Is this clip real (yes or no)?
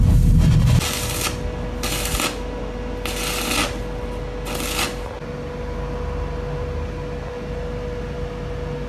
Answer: yes